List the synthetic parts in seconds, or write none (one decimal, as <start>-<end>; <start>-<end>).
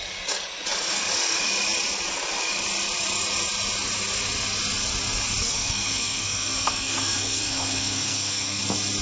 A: 5.4-8.6